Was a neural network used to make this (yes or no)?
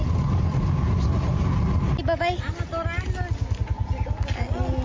no